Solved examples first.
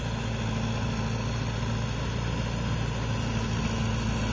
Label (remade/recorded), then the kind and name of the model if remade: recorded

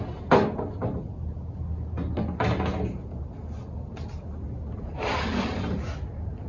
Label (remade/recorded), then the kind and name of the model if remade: recorded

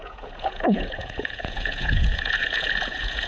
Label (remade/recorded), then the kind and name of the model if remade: remade, vocoder, Vocos